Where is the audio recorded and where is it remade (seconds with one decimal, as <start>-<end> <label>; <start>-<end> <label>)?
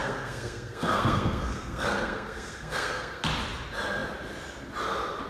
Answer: 0.0-3.2 remade; 3.2-5.3 recorded